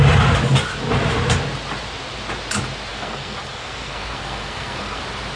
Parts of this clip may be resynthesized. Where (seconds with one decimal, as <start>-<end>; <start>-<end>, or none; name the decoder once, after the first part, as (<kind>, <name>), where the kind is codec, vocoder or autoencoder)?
2.9-5.0 (codec, SNAC)